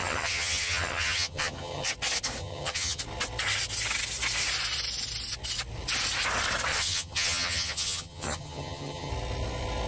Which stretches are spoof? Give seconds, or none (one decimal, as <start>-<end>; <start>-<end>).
0.0-1.9; 2.4-3.0; 6.7-9.1